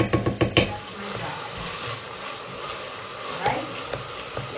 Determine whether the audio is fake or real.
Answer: real